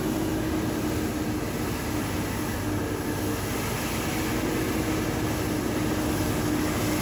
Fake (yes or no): no